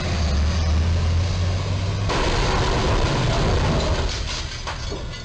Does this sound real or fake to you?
real